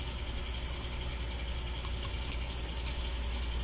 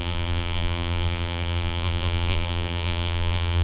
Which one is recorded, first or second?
first